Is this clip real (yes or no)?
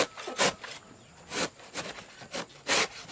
yes